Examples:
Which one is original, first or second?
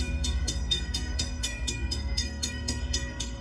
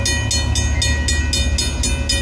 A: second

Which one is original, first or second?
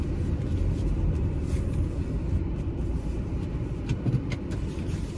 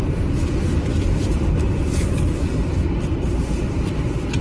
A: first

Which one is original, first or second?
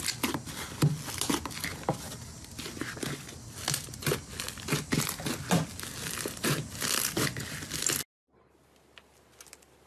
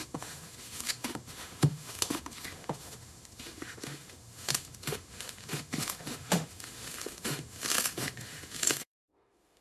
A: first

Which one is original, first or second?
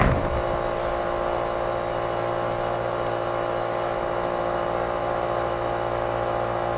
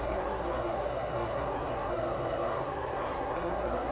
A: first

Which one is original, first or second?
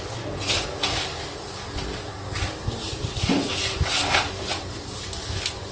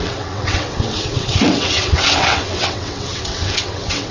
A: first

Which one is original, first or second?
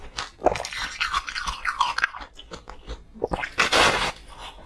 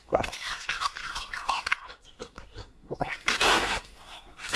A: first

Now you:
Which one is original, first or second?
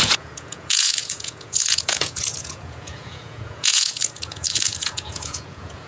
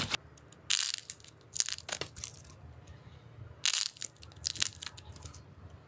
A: second